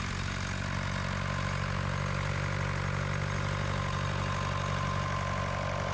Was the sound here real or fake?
real